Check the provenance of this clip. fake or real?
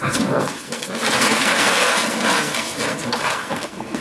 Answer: fake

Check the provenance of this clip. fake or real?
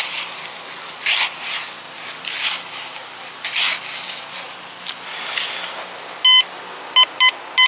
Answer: real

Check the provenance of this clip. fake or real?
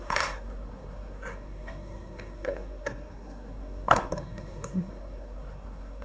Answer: fake